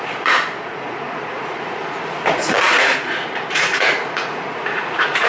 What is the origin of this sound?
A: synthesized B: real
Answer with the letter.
A